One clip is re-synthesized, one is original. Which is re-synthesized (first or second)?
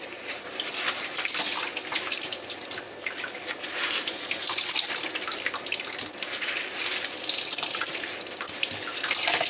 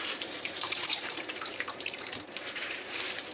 second